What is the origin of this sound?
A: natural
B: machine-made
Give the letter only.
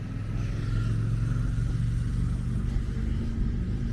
A